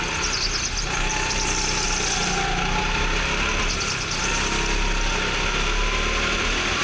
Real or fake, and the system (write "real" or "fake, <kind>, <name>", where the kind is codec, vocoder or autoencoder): real